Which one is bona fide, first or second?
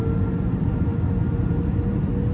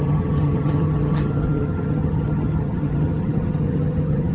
first